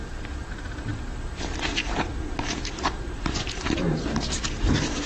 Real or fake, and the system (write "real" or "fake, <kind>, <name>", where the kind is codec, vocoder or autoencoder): fake, vocoder, BigVGAN v2